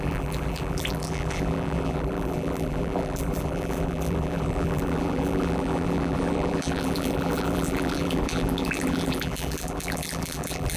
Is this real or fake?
fake